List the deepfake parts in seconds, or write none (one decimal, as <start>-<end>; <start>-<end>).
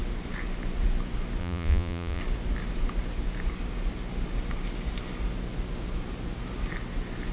1.4-2.2